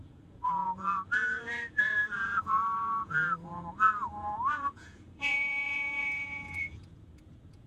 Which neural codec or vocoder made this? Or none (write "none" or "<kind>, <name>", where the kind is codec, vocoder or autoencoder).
vocoder, Vocos